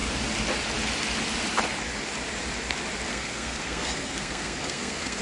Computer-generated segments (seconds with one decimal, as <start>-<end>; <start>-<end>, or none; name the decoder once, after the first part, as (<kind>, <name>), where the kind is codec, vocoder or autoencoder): 3.1-5.2 (codec, SNAC)